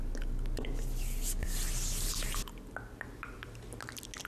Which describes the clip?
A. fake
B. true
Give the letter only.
B